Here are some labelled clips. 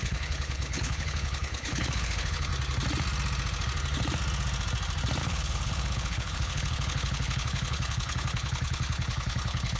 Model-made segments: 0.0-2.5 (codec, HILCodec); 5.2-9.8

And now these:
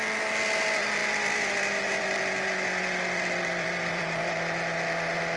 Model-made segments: 1.0-4.2 (vocoder, BigVGAN v2)

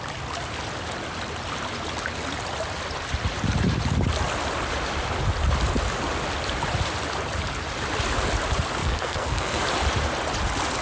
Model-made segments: 8.8-9.6 (codec, SNAC)

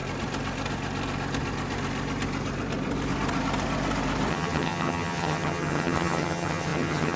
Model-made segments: 4.3-7.2 (vocoder, HiFi-GAN)

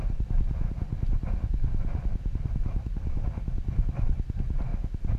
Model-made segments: none

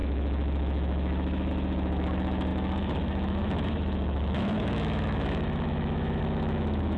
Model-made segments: 0.0-7.0 (autoencoder, DAC-VAE)

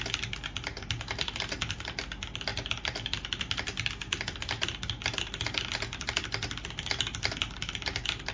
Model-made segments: none